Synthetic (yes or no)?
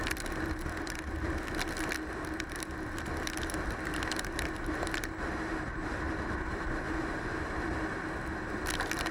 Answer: no